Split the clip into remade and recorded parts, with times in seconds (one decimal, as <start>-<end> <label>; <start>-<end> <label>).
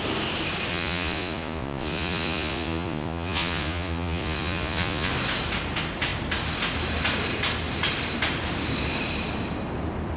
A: 0.0-0.7 recorded; 0.7-5.1 remade; 5.1-10.2 recorded